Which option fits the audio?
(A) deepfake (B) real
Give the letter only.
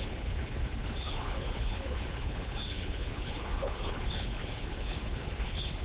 A